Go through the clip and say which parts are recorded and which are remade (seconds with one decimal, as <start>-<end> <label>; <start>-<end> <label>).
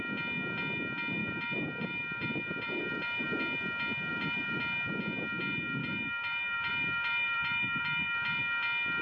0.0-1.2 recorded; 1.2-3.4 remade; 3.4-4.1 recorded; 4.1-4.6 remade; 4.6-5.8 recorded; 5.8-8.4 remade; 8.4-9.0 recorded